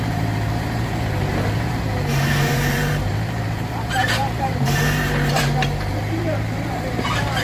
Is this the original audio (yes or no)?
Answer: no